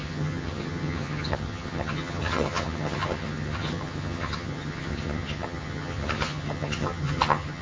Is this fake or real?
fake